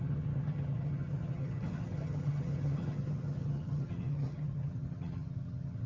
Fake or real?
fake